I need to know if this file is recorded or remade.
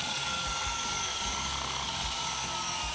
remade